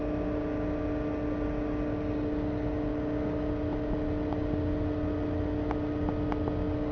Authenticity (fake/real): real